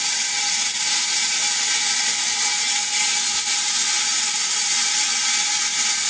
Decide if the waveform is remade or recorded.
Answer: recorded